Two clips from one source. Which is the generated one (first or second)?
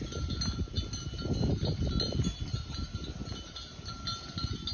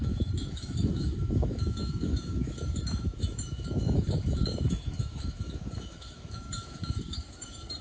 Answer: second